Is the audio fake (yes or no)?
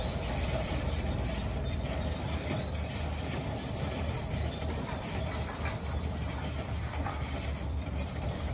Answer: yes